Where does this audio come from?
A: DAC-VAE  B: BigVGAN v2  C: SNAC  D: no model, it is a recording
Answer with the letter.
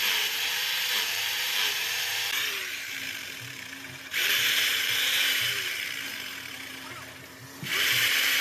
B